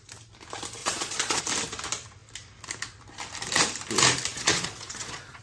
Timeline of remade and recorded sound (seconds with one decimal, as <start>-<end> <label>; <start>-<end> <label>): 0.0-0.8 recorded; 0.8-1.4 remade; 1.4-4.3 recorded; 4.3-5.4 remade